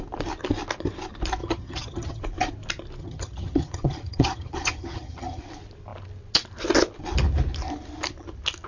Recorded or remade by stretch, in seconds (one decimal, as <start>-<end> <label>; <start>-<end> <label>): 0.0-1.4 recorded; 1.4-2.2 remade; 2.2-3.0 recorded; 3.0-5.4 remade; 5.4-8.7 recorded